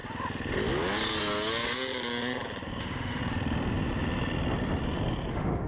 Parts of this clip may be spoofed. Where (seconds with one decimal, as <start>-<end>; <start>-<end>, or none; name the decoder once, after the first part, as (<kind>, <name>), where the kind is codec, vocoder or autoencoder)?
2.8-3.2 (autoencoder, DAC-VAE); 5.3-5.7